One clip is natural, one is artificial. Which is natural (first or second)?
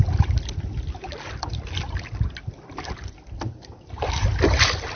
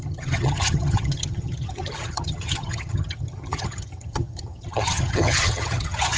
first